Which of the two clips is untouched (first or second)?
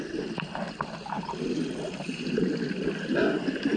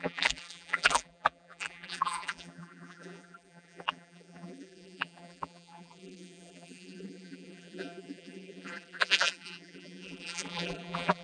first